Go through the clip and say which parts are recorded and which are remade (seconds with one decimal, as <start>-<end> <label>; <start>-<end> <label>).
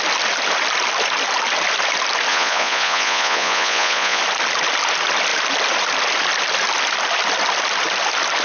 0.0-2.3 recorded; 2.3-4.2 remade; 4.2-8.4 recorded